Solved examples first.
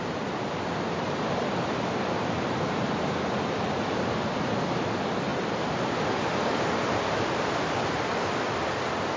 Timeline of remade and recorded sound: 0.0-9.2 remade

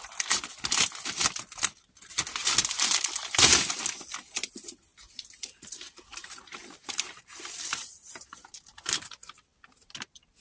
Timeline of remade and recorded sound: 0.0-2.4 recorded; 2.4-4.3 remade; 4.3-4.9 recorded; 4.9-8.8 remade; 8.8-10.4 recorded

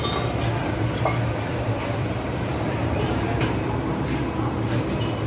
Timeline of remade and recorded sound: 0.0-0.6 recorded; 0.6-3.8 remade; 3.8-5.3 recorded

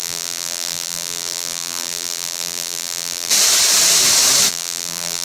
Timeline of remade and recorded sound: 0.0-3.3 remade; 3.3-4.5 recorded; 4.5-5.2 remade

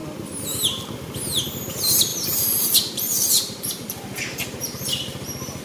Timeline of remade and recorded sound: 0.0-2.1 recorded; 2.1-5.6 remade

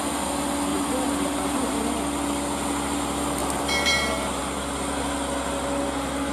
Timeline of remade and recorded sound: 0.0-0.7 recorded; 0.7-2.0 remade; 2.0-3.4 recorded; 3.4-4.4 remade; 4.4-6.3 recorded